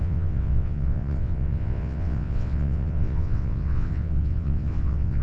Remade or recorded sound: remade